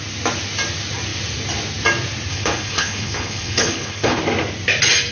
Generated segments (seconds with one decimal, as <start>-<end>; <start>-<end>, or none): 2.3-4.2